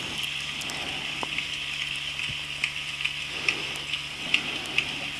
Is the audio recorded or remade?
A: recorded